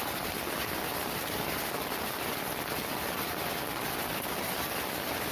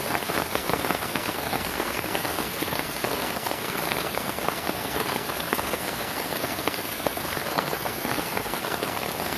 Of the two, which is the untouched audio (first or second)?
first